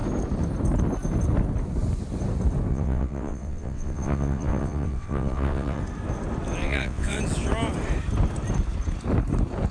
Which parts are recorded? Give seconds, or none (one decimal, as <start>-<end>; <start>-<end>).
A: 0.0-2.7; 5.8-6.6; 7.2-9.7